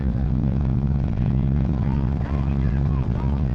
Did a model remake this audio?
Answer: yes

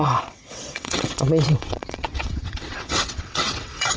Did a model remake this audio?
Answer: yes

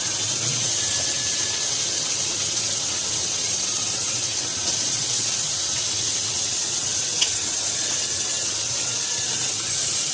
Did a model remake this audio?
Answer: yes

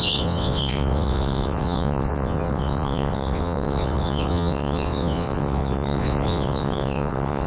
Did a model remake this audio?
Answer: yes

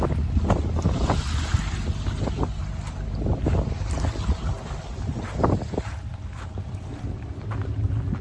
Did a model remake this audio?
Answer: no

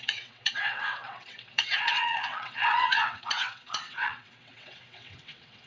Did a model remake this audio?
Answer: yes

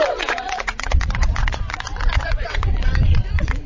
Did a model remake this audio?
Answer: yes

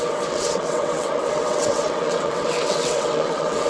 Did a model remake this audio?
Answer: yes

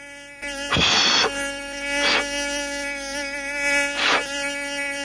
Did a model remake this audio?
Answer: no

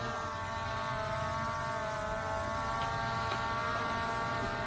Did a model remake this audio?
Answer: no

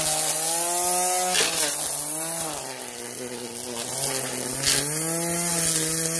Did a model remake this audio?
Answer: no